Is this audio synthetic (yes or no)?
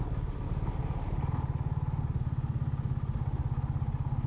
no